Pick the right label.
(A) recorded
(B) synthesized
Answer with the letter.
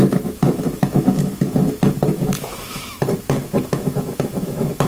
B